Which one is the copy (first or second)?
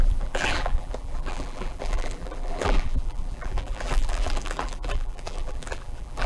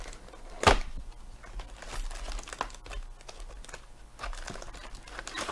first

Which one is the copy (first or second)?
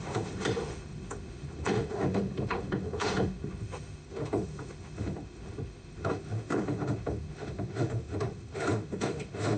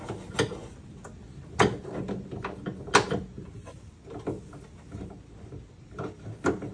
first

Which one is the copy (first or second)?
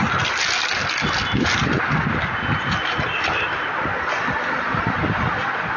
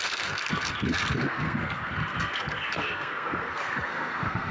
second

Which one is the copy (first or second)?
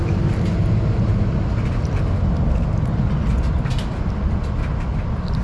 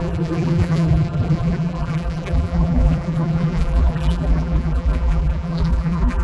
second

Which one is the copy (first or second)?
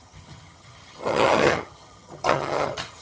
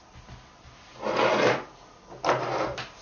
first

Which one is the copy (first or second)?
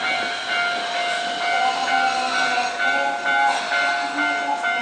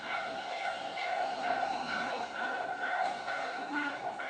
second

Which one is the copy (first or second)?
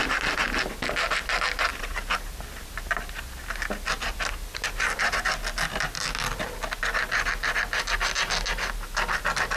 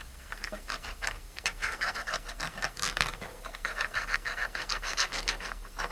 second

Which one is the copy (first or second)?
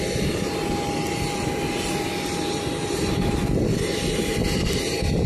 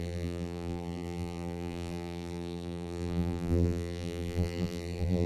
second